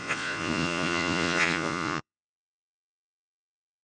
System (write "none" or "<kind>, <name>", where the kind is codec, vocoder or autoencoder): vocoder, Vocos